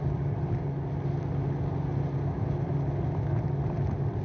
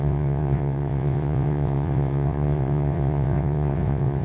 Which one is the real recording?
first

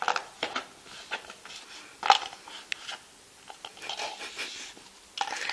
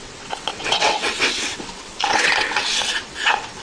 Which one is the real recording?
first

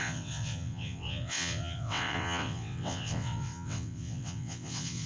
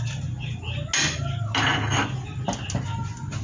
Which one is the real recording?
second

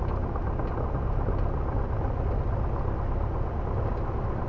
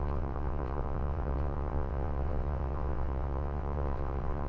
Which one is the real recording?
first